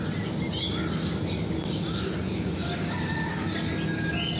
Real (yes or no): yes